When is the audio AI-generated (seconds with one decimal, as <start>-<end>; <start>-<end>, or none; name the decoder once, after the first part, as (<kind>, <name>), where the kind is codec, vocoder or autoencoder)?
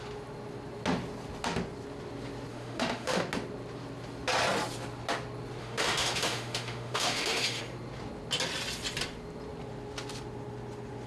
2.5-3.2 (autoencoder, DAC-VAE); 5.6-7.6